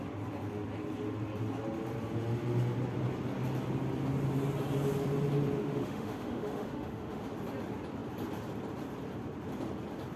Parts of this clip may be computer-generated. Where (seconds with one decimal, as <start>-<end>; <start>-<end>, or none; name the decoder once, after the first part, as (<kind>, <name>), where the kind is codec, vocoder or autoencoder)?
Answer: 5.6-7.2 (autoencoder, DAC-VAE)